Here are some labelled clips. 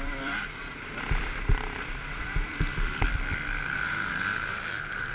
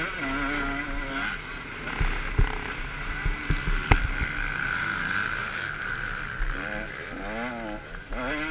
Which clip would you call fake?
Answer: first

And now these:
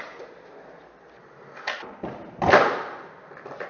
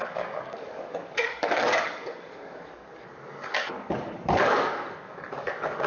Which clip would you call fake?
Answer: second